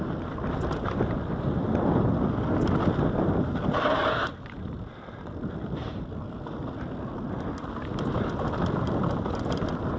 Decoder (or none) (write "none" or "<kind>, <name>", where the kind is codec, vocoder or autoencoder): none